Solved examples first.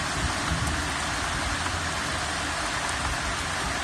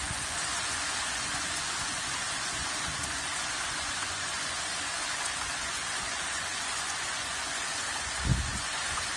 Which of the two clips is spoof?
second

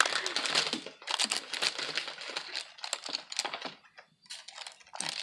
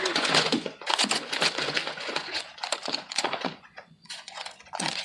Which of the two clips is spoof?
second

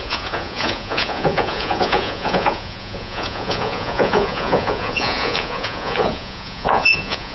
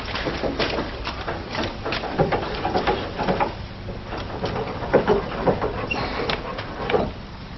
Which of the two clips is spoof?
first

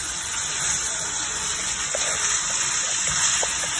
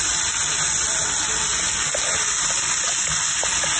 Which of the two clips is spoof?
first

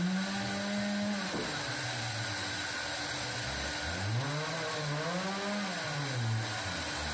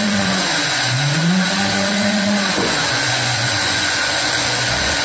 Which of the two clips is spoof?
second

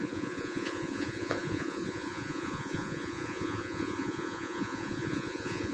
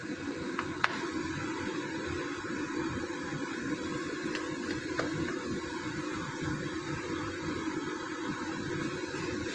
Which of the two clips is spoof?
first